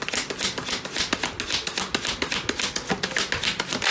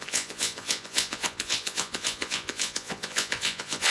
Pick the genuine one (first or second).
first